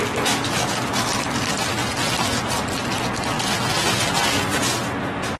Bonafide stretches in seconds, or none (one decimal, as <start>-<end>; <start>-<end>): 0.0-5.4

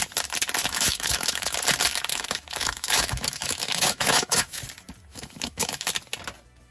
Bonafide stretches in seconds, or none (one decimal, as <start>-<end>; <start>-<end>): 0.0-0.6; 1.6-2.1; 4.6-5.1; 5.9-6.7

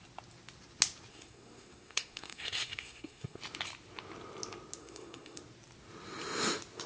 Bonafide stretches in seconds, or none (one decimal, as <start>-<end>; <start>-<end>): 0.0-1.1; 3.4-4.8; 5.4-6.9

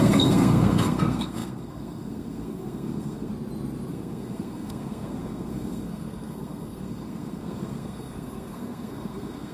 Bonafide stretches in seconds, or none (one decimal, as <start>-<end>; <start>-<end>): 3.3-3.9